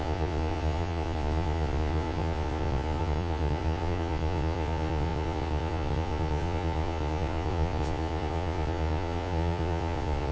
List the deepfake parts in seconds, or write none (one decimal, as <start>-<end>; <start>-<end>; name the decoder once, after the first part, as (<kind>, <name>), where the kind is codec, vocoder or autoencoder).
0.0-10.3 (vocoder, Vocos)